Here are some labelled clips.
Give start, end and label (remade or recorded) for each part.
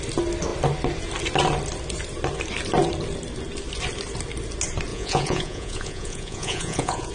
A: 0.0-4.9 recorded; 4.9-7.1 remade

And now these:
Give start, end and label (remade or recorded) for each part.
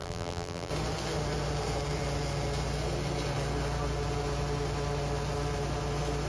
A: 0.0-0.7 remade; 0.7-6.3 recorded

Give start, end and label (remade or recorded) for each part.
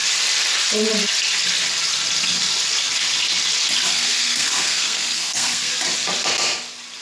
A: 0.0-3.9 recorded; 3.9-5.7 remade; 5.7-7.0 recorded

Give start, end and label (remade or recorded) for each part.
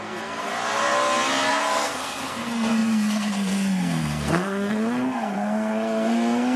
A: 0.0-0.5 remade; 0.5-1.5 recorded; 1.5-6.6 remade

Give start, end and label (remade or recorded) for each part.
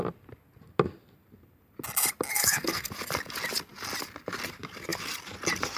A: 0.0-2.3 recorded; 2.3-2.9 remade; 2.9-5.8 recorded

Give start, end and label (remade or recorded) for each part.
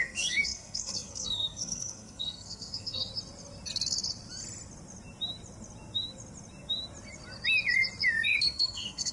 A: 0.0-3.1 remade; 3.1-8.4 recorded; 8.4-9.1 remade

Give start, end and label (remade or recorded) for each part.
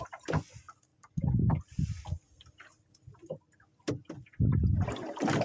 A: 0.0-5.4 recorded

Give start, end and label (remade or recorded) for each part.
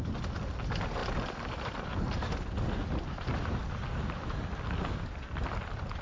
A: 0.0-6.0 recorded